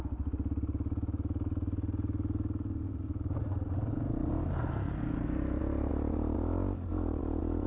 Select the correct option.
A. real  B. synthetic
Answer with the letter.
A